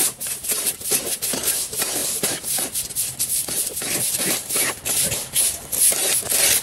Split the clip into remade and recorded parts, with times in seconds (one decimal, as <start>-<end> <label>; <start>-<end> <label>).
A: 0.0-0.7 remade; 0.7-2.0 recorded; 2.0-4.3 remade; 4.3-6.6 recorded